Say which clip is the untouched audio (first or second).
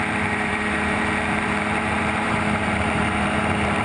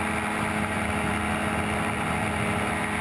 second